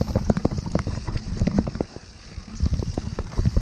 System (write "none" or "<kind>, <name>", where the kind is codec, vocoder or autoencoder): vocoder, BigVGAN v2